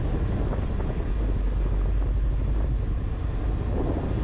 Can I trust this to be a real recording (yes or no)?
yes